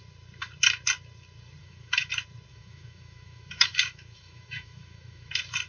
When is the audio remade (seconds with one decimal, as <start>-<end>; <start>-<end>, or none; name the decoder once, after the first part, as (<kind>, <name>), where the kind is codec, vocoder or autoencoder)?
1.6-2.1 (autoencoder, DAC-VAE); 2.5-5.3